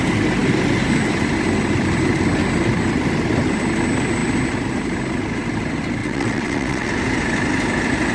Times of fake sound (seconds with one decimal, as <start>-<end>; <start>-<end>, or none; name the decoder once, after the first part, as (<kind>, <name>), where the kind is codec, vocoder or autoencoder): 6.0-6.9 (vocoder, WaveNeXt)